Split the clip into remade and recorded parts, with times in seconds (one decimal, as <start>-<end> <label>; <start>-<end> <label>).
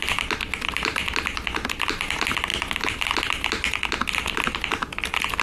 0.0-5.4 recorded